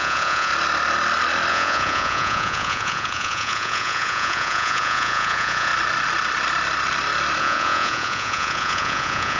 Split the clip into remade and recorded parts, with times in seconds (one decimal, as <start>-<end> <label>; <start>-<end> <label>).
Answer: 0.0-0.5 remade; 0.5-1.5 recorded; 1.5-5.7 remade; 5.7-7.4 recorded; 7.4-9.4 remade